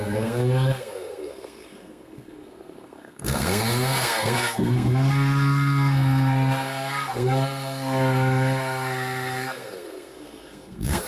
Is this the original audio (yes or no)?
no